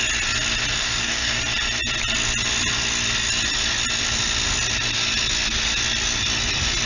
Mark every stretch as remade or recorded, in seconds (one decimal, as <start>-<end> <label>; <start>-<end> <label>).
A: 0.0-0.8 recorded; 0.8-1.4 remade; 1.4-6.9 recorded